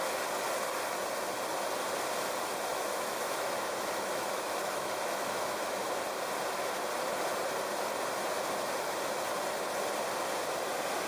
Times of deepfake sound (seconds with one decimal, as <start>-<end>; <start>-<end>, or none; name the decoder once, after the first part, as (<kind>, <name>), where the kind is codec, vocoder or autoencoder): 2.7-5.8 (autoencoder, DAC-VAE)